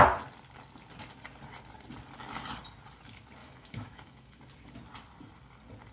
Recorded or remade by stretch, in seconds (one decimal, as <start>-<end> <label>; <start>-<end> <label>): 0.0-3.4 recorded; 3.4-4.4 remade; 4.4-5.9 recorded